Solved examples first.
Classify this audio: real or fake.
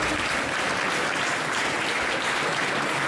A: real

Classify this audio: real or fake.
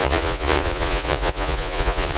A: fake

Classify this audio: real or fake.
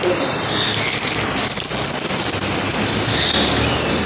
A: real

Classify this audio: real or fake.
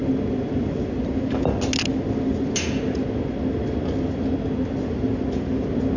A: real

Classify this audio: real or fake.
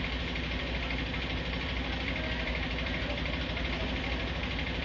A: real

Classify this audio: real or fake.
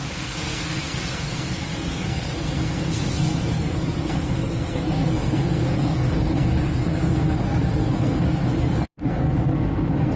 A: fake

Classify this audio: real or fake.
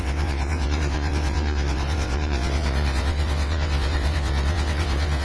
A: fake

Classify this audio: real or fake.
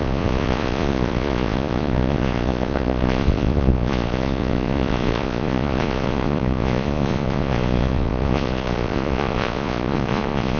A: fake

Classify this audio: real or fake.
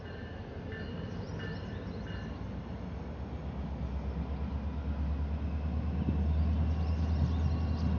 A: real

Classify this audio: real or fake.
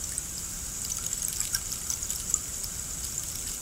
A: real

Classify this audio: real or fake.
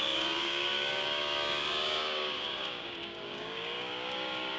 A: fake